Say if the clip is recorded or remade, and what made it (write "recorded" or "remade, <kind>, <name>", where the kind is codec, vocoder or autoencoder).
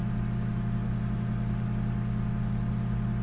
recorded